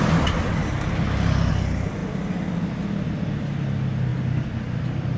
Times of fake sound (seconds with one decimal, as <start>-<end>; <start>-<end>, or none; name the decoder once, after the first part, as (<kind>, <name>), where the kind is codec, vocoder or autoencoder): none